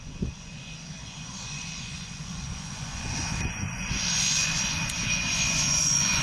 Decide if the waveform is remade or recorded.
remade